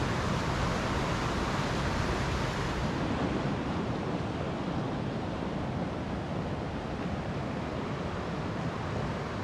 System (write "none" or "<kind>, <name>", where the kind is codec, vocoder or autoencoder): none